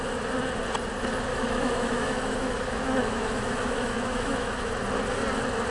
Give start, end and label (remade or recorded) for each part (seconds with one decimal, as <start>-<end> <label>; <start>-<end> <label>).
0.0-1.3 recorded; 1.3-4.7 remade; 4.7-5.7 recorded

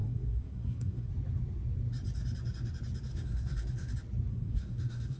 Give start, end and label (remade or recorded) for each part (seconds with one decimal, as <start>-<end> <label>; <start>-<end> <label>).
0.0-1.1 remade; 1.1-3.1 recorded; 3.1-3.9 remade; 3.9-4.3 recorded; 4.3-5.2 remade